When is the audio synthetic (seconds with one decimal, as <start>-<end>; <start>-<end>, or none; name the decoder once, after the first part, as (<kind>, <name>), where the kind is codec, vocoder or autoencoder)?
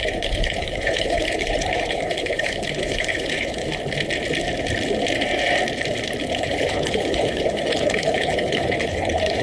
0.0-3.6 (codec, HILCodec); 6.2-9.4